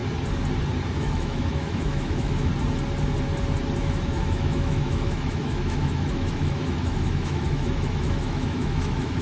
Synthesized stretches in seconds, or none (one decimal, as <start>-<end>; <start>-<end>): 0.9-2.5; 3.8-9.2

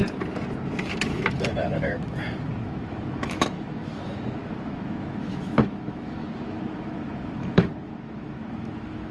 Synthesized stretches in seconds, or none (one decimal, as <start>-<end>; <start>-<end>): 1.0-9.1

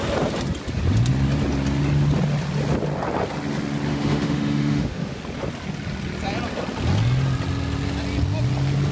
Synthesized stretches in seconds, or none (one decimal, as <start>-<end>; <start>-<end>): 3.9-5.2

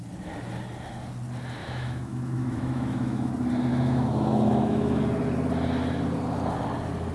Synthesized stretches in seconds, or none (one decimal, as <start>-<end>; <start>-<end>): 1.6-3.3; 3.7-5.0

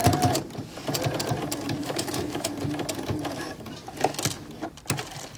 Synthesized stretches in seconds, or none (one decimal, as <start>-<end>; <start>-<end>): 1.8-2.5

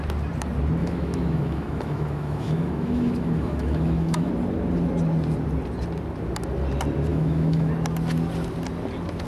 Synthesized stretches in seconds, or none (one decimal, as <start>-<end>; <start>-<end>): 0.8-4.3; 7.1-7.7